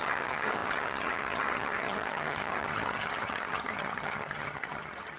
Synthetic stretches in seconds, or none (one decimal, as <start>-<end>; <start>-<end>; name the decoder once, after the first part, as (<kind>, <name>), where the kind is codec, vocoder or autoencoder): 0.0-5.2 (vocoder, HiFi-GAN)